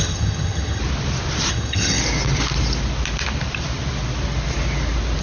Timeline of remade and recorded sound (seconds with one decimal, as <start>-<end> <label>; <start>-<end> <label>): 0.0-0.8 remade; 0.8-1.5 recorded; 1.5-2.0 remade; 2.0-5.2 recorded